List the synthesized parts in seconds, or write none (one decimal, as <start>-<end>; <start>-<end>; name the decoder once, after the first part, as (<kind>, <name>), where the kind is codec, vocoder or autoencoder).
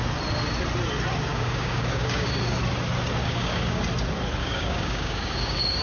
1.3-2.4 (codec, DAC); 3.2-3.8; 4.4-5.8